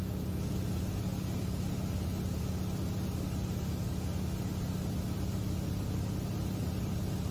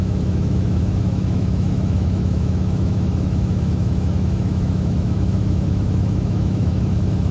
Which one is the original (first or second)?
first